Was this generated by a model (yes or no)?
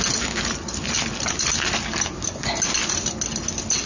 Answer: no